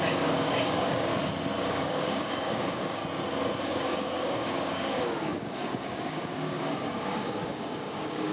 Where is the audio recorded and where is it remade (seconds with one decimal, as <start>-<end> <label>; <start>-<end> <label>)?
0.0-1.1 remade; 1.1-1.6 recorded; 1.6-3.0 remade; 3.0-3.6 recorded; 3.6-8.3 remade